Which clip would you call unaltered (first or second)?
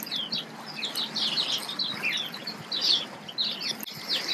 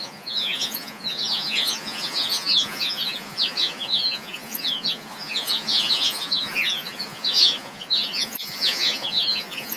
first